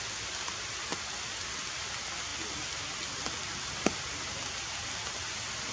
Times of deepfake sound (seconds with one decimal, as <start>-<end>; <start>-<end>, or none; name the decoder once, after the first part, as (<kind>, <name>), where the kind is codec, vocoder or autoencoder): none